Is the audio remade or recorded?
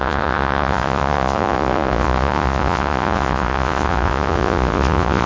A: remade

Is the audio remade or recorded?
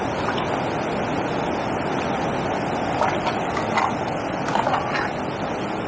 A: recorded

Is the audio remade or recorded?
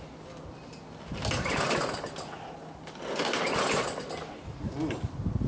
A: recorded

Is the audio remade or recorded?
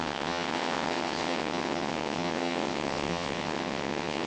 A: remade